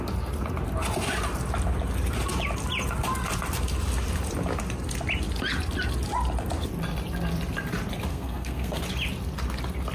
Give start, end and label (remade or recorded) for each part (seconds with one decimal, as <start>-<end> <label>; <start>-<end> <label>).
0.0-8.1 recorded; 8.1-8.8 remade; 8.8-9.9 recorded